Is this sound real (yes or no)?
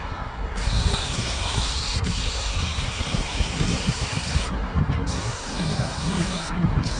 no